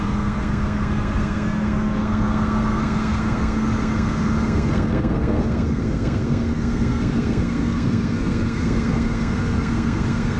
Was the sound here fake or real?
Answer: fake